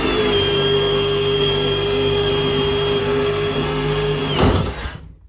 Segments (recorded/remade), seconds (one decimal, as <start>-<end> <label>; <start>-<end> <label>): 0.0-0.5 recorded; 0.5-2.3 remade; 2.3-3.0 recorded; 3.0-4.2 remade; 4.2-5.3 recorded